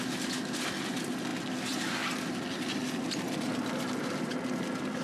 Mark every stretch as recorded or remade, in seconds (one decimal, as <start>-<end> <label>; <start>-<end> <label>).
0.0-5.0 recorded